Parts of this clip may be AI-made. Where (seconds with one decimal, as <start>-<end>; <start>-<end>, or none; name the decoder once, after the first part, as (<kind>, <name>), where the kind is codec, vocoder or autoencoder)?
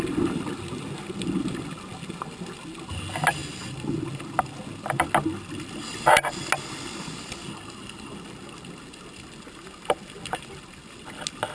none